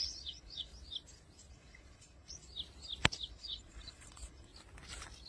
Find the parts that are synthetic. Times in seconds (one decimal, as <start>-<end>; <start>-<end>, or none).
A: 0.0-0.7; 1.5-2.4; 3.3-4.5